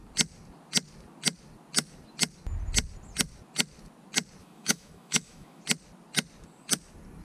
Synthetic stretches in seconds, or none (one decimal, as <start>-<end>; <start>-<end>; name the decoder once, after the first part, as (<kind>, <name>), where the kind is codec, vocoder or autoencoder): 4.4-5.6 (autoencoder, DAC-VAE)

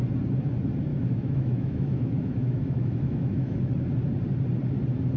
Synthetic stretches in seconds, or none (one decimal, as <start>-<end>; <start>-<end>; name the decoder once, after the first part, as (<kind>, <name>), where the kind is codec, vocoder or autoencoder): 0.9-3.6 (autoencoder, DAC-VAE)

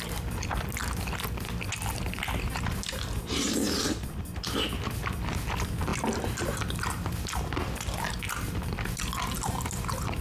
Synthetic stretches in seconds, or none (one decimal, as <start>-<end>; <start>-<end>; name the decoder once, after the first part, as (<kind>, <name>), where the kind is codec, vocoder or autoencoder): none